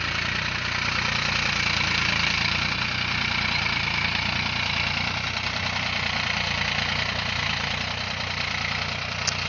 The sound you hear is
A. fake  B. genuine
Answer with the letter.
B